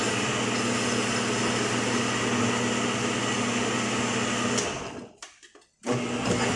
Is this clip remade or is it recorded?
recorded